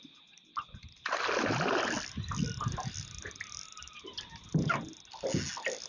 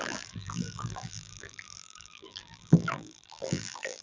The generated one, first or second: second